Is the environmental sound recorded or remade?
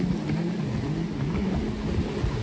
recorded